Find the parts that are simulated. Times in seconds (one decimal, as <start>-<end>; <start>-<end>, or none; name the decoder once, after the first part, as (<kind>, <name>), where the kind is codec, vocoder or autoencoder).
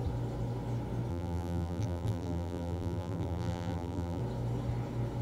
1.1-4.2 (vocoder, BigVGAN v2)